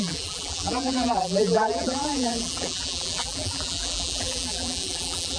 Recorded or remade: remade